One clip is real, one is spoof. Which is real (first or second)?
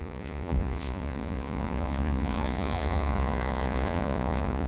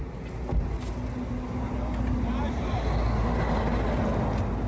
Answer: second